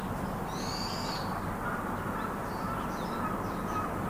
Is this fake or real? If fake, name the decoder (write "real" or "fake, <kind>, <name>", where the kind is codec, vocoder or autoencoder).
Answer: real